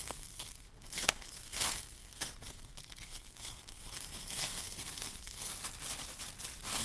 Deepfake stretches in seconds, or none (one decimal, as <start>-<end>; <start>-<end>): 0.0-5.5